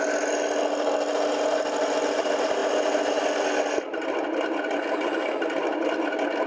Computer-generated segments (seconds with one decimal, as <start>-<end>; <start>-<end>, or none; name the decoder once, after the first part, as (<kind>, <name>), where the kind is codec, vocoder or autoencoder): none